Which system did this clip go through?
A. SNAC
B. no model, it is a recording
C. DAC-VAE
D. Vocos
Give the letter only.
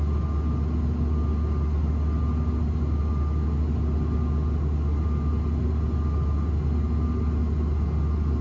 B